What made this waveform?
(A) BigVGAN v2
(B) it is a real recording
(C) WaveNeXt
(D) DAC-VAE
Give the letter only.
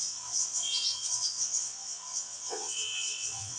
C